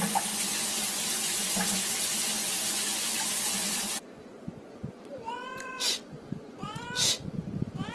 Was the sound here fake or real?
fake